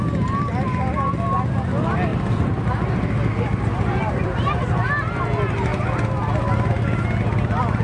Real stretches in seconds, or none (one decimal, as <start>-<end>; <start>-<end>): 0.0-2.1; 4.9-7.8